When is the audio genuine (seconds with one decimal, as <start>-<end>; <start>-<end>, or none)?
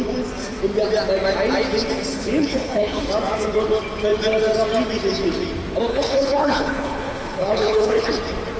0.0-2.1; 3.1-5.9; 8.1-8.6